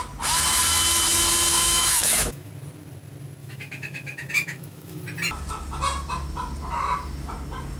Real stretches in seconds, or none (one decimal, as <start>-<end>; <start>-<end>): 0.0-1.5; 2.5-3.4; 5.0-7.8